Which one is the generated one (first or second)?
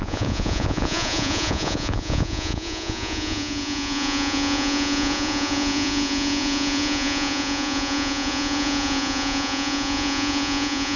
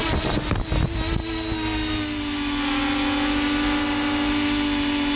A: first